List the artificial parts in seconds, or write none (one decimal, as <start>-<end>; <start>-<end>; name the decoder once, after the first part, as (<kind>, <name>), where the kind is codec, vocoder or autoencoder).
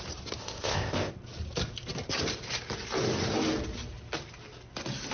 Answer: 0.4-1.1 (codec, ZipCodec)